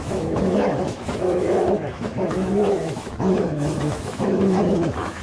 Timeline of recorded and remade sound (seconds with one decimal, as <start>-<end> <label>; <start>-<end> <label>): 0.0-5.2 remade

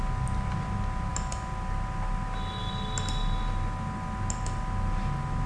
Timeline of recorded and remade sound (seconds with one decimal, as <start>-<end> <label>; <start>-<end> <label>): 0.0-5.5 recorded

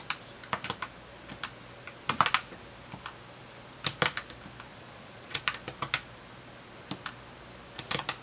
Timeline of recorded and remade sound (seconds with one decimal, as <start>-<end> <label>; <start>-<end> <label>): 0.0-4.7 recorded; 4.7-5.4 remade; 5.4-8.2 recorded

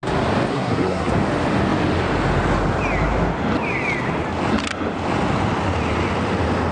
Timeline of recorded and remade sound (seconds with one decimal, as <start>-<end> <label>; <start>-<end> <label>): 0.0-0.5 recorded; 0.5-1.1 remade; 1.1-6.7 recorded

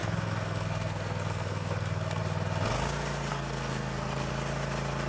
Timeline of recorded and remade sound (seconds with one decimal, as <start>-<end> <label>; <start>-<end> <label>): 0.0-2.2 remade; 2.2-3.3 recorded; 3.3-4.3 remade; 4.3-5.1 recorded

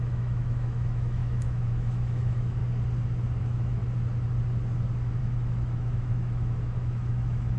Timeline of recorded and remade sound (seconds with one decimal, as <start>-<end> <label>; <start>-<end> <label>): 0.0-2.6 remade; 2.6-3.4 recorded; 3.4-3.8 remade; 3.8-5.2 recorded; 5.2-7.6 remade

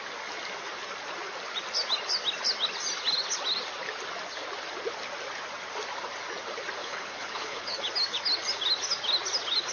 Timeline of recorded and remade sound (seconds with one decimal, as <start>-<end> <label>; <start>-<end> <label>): 0.0-6.8 recorded; 6.8-7.8 remade; 7.8-9.7 recorded

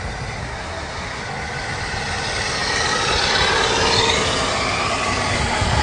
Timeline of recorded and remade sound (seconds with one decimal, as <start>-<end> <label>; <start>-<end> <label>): 0.0-0.4 recorded; 0.4-1.2 remade; 1.2-5.8 recorded